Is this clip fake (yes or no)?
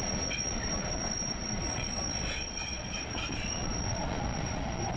yes